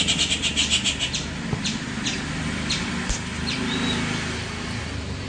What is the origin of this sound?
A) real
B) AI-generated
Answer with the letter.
A